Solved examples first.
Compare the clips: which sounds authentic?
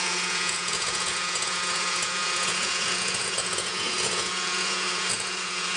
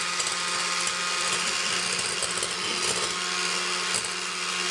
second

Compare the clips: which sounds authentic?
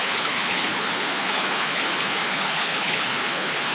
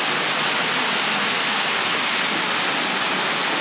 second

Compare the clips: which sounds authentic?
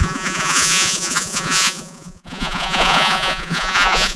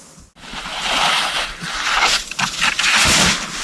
second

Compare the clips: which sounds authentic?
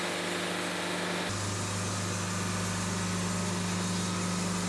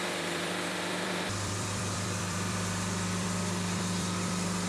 first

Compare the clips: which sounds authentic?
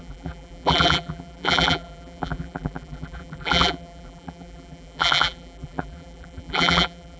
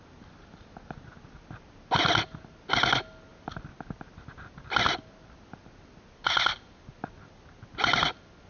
second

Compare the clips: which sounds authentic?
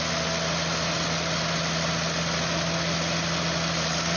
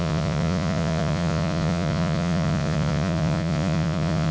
first